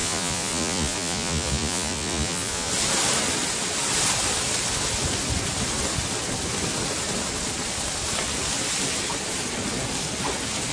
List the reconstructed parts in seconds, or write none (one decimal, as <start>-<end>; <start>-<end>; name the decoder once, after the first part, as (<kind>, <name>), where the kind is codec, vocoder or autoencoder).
0.0-2.7 (vocoder, Vocos)